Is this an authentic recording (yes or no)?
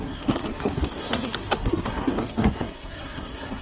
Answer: no